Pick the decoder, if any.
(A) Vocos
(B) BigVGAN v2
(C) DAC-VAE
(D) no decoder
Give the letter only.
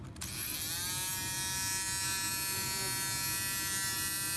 D